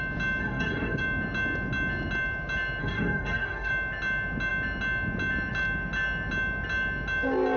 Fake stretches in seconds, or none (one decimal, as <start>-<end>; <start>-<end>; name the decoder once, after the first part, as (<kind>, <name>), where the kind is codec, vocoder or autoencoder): 0.4-1.0 (codec, DAC); 2.8-3.7